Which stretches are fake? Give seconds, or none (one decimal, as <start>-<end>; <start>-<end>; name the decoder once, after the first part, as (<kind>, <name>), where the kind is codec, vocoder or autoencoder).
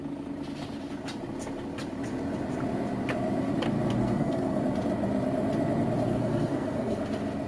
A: 4.0-4.6 (codec, SNAC); 6.1-7.0